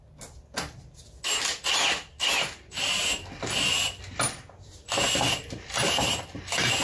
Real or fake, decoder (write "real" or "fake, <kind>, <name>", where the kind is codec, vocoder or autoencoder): real